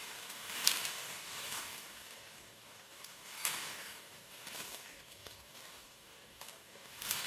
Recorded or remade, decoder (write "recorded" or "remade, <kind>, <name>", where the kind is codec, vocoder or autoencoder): remade, codec, DAC